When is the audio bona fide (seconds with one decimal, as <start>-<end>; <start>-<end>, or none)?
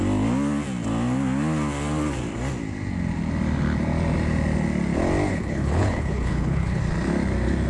0.0-5.3; 6.8-7.7